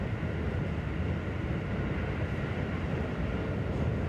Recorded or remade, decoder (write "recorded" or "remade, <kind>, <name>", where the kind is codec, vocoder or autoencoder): recorded